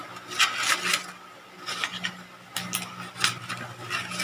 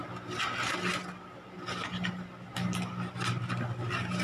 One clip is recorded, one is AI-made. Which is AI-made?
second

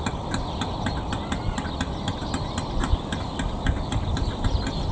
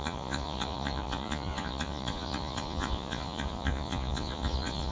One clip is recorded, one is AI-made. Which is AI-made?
second